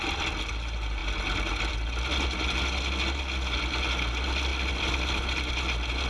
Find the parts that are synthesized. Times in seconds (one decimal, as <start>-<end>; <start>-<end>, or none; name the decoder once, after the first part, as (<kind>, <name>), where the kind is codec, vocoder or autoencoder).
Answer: none